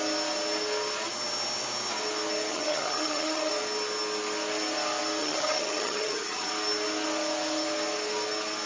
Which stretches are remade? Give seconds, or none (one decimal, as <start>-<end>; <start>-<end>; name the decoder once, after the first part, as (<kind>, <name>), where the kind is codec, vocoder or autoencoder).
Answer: 2.5-3.5 (vocoder, HiFi-GAN); 5.2-6.5